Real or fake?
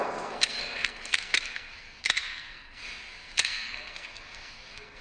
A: fake